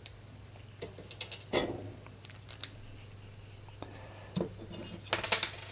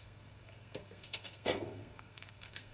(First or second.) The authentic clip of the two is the first